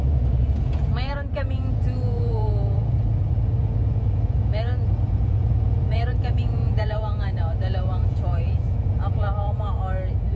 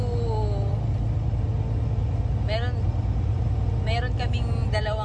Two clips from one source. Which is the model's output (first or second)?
first